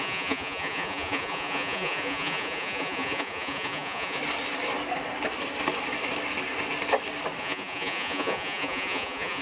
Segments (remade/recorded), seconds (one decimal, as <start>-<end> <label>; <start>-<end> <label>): 0.0-4.2 remade; 4.2-7.4 recorded; 7.4-9.4 remade